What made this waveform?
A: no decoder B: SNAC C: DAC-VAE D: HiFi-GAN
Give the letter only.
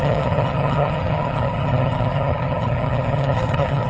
D